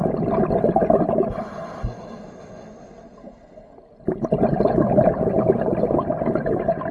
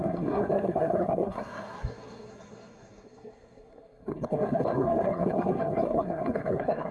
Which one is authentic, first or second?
first